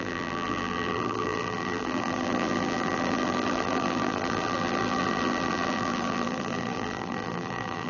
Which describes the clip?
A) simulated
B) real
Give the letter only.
A